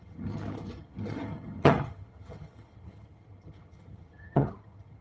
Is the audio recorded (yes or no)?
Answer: no